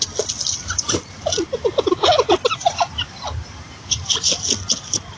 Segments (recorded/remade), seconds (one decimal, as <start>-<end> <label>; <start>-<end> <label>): 0.0-0.6 recorded; 0.6-1.2 remade; 1.2-2.6 recorded; 2.6-4.3 remade; 4.3-5.2 recorded